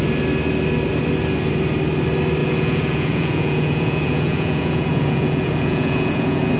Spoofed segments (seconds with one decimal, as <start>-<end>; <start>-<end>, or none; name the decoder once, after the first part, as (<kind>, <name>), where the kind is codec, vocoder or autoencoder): 2.4-6.6 (vocoder, Vocos)